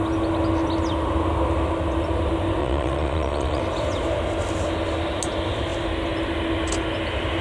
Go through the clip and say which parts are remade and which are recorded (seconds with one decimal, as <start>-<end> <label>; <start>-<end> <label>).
0.0-2.6 recorded; 2.6-3.6 remade; 3.6-7.4 recorded